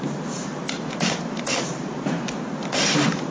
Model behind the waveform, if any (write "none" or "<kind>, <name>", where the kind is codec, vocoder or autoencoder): vocoder, BigVGAN v2